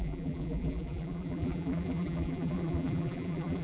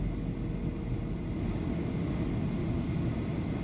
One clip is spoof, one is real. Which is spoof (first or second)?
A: first